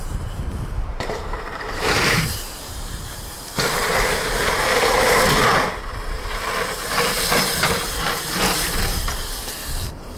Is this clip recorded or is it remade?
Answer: remade